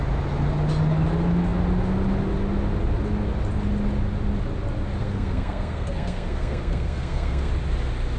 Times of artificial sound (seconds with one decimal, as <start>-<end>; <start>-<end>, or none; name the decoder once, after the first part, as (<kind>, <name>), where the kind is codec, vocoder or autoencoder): 5.0-7.5 (codec, SNAC)